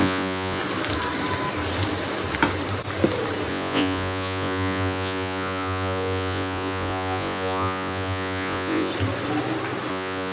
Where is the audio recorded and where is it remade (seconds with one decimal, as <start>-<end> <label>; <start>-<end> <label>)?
0.0-0.6 remade; 0.6-3.5 recorded; 3.5-8.9 remade; 8.9-9.9 recorded; 9.9-10.3 remade